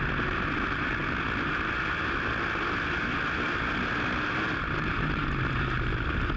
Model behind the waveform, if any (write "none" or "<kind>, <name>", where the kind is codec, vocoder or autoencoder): none